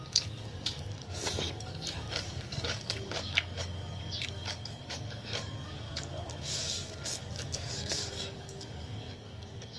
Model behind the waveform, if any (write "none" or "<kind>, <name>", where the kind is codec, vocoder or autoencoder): codec, DAC